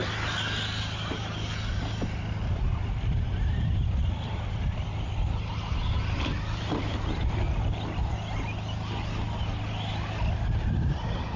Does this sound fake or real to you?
real